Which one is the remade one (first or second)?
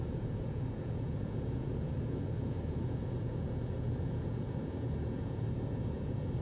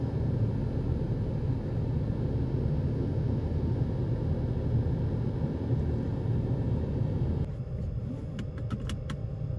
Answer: first